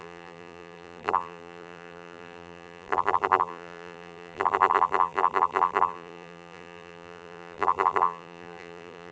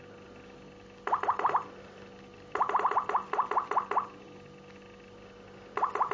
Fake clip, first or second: first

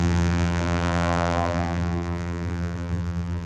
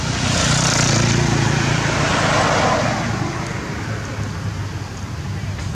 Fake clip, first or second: first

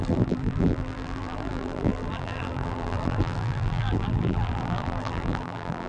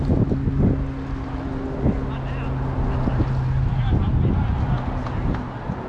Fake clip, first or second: first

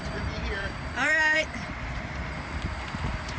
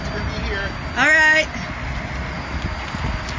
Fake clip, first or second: first